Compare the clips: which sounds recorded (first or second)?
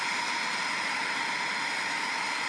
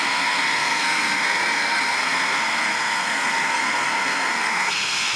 first